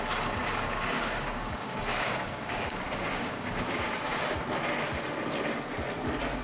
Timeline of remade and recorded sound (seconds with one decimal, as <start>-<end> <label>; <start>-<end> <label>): 0.0-0.4 recorded; 0.4-4.2 remade; 4.2-6.4 recorded